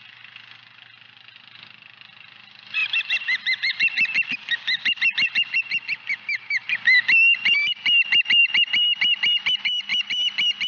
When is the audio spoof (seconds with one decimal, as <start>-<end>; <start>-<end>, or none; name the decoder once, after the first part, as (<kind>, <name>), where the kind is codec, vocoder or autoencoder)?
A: none